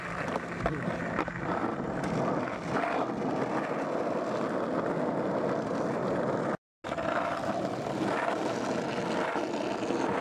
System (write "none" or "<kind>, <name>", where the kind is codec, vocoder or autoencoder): none